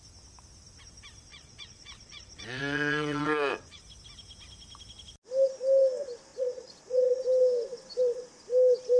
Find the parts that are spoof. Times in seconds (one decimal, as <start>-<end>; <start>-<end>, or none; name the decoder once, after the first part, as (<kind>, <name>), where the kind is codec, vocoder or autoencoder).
1.3-3.8 (vocoder, Vocos); 6.3-7.2